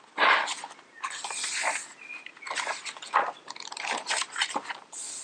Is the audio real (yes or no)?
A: yes